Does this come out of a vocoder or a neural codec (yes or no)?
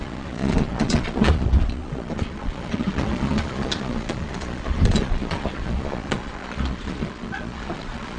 yes